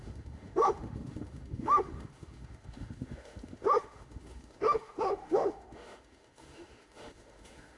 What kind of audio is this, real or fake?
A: fake